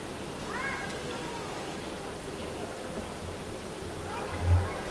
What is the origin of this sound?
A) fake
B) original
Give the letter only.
B